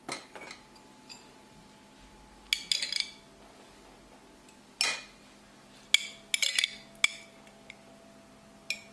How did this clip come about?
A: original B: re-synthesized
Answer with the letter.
A